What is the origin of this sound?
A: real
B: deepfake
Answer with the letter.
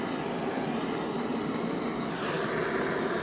A